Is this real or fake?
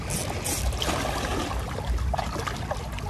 real